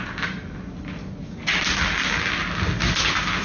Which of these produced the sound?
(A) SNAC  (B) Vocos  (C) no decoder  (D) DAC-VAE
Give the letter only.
C